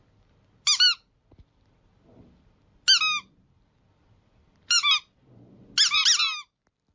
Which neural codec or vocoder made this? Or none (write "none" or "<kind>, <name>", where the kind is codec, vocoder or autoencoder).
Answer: none